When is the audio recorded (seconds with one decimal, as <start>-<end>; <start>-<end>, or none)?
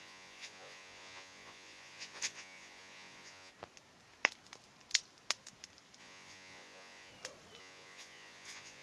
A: 3.5-6.0; 7.1-7.6